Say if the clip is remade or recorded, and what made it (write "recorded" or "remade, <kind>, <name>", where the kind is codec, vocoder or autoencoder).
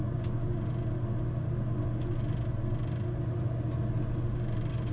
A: recorded